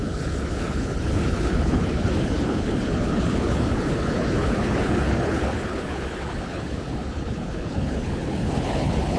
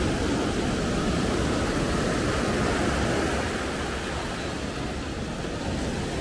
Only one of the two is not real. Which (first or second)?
first